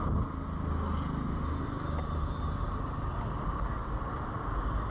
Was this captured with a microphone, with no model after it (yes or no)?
yes